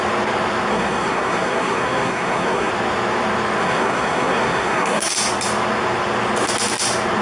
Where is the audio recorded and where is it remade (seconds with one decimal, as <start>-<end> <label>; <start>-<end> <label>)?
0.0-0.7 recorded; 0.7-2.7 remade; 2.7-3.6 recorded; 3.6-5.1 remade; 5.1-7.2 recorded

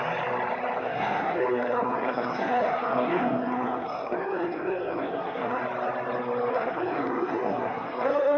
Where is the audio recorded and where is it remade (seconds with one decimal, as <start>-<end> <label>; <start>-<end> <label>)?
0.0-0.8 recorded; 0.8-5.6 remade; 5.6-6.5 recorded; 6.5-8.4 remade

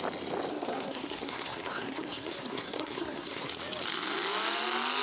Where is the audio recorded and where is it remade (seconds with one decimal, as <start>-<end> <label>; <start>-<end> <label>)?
0.0-0.5 recorded; 0.5-3.5 remade; 3.5-5.0 recorded